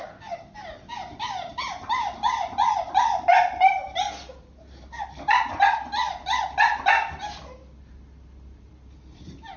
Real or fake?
real